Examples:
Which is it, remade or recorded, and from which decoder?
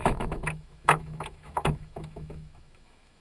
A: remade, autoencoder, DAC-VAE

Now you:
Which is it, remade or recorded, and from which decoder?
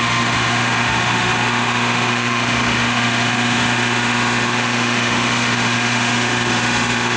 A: remade, autoencoder, DAC-VAE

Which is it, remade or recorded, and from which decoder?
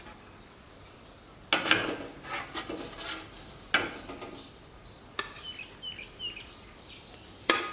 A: recorded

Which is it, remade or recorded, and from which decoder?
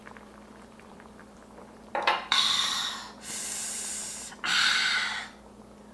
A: remade, vocoder, BigVGAN v2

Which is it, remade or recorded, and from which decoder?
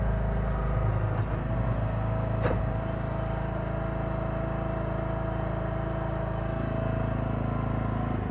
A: recorded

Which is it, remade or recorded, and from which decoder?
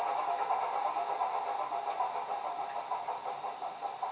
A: recorded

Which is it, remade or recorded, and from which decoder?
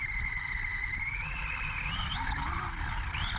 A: recorded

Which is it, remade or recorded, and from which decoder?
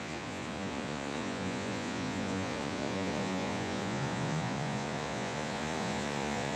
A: remade, vocoder, Vocos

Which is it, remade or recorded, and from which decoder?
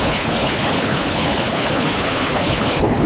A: remade, codec, HILCodec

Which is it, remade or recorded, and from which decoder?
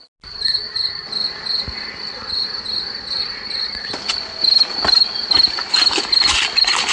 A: recorded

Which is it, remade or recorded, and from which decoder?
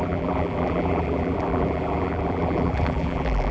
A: remade, vocoder, BigVGAN v2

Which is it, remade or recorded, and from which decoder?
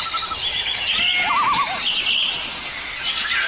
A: recorded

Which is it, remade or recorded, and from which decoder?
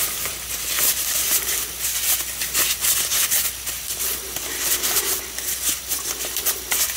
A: recorded